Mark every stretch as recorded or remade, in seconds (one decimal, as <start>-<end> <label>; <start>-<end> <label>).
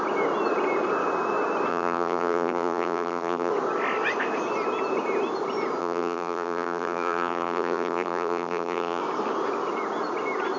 0.0-1.7 recorded; 1.7-3.5 remade; 3.5-5.8 recorded; 5.8-9.0 remade; 9.0-10.6 recorded